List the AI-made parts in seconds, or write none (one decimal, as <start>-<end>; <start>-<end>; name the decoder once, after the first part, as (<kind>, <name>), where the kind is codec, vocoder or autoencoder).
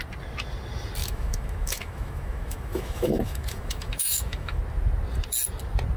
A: 1.0-4.6 (autoencoder, DAC-VAE)